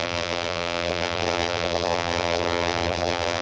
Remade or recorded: remade